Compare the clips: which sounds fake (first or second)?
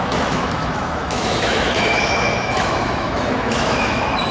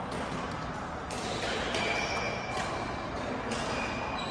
first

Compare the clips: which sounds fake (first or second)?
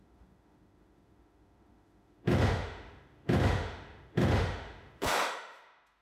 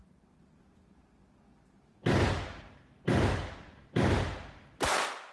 first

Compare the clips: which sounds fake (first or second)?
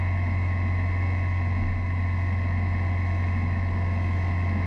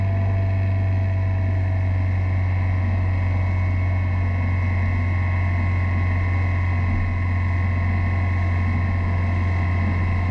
first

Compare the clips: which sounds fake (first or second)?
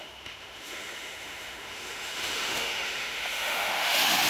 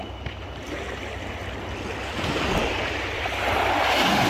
first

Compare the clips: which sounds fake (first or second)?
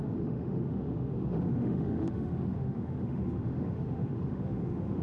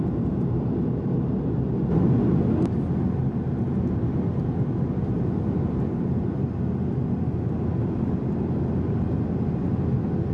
first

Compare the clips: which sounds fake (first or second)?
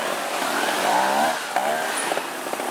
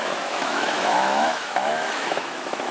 second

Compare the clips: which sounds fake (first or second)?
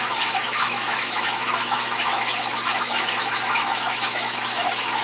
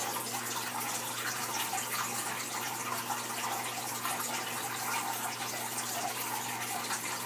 first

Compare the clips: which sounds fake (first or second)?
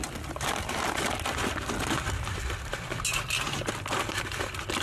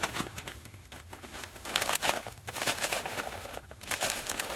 second